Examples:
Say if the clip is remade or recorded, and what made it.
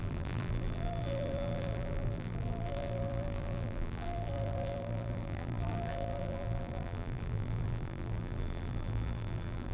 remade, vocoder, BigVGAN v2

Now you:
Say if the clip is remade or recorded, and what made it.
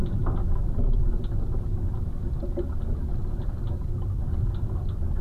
recorded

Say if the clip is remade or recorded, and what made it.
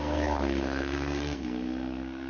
remade, codec, SNAC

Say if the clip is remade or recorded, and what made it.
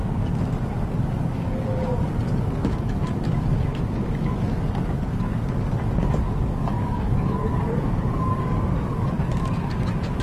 remade, codec, DAC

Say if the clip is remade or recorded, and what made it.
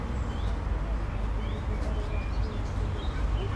recorded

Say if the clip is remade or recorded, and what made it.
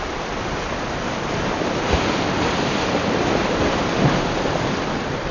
recorded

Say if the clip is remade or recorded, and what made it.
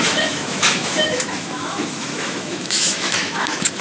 remade, autoencoder, DAC-VAE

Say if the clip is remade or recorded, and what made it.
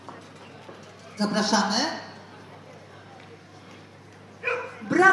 recorded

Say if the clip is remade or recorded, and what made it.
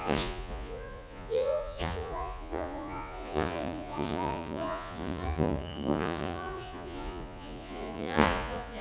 remade, vocoder, Vocos